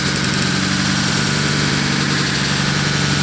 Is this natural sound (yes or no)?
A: yes